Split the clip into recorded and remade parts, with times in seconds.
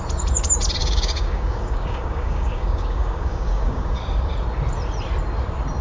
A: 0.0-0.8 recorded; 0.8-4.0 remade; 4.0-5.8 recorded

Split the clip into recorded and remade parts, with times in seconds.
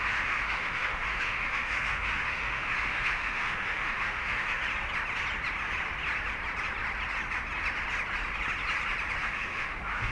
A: 0.0-4.6 remade; 4.6-9.2 recorded; 9.2-10.1 remade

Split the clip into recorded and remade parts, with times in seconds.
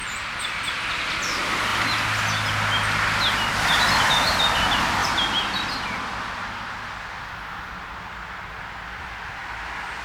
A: 0.0-0.7 remade; 0.7-10.0 recorded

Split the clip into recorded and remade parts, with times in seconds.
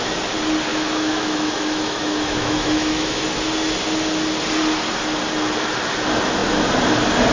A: 0.0-0.7 recorded; 0.7-3.2 remade; 3.2-7.3 recorded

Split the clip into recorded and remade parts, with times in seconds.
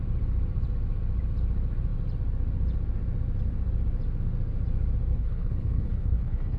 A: 0.0-5.1 recorded; 5.1-6.6 remade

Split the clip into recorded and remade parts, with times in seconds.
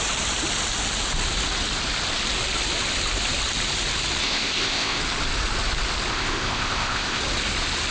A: 0.0-4.2 recorded; 4.2-5.0 remade; 5.0-6.1 recorded; 6.1-7.2 remade; 7.2-7.9 recorded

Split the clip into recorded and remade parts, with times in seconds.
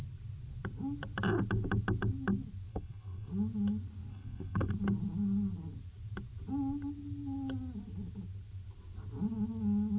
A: 0.0-2.7 recorded; 2.7-3.3 remade; 3.3-4.1 recorded; 4.1-4.7 remade; 4.7-10.0 recorded